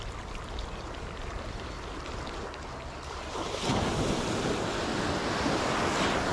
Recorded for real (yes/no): yes